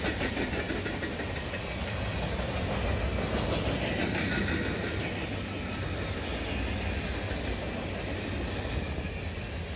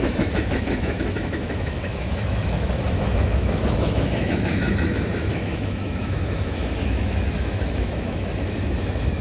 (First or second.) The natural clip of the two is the first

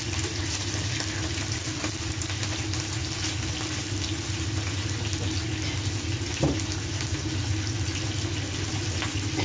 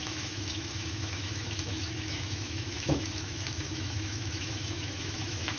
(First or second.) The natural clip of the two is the first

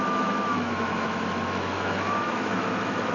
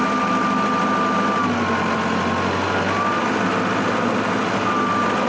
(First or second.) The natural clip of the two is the second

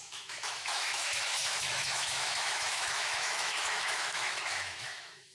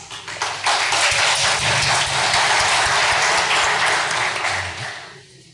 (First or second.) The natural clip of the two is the second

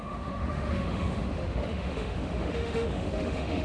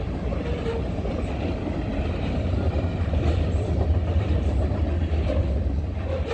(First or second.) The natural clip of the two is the second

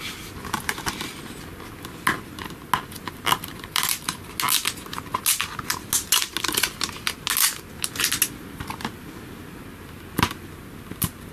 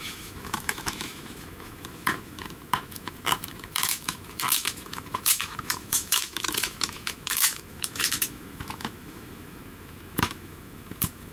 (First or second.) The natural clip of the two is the first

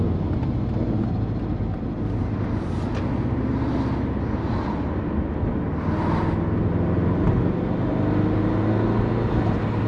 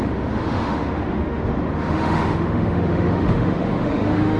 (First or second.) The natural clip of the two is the first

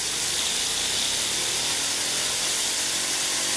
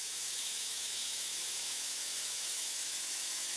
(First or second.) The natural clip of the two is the first